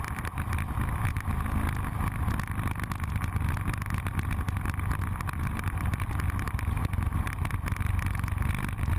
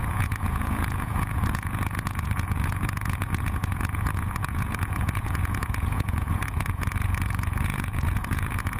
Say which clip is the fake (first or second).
second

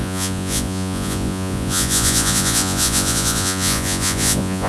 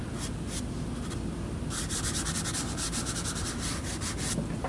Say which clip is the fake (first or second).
first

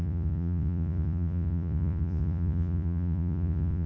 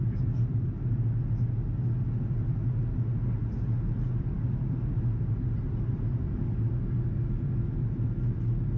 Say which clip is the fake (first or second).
first